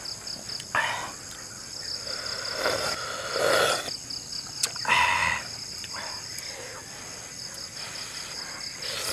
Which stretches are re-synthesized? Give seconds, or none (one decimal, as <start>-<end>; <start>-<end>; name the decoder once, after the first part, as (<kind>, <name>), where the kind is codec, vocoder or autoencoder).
none